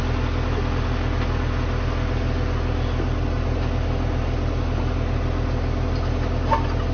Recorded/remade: recorded